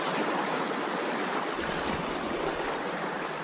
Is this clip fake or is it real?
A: real